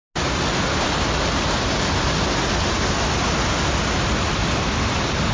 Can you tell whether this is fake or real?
real